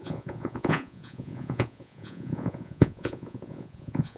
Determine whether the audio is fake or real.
fake